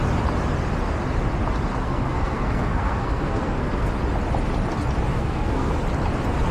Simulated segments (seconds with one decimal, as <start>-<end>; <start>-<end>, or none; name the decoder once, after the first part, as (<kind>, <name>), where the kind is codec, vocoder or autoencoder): 1.8-3.9 (codec, SNAC); 5.1-5.7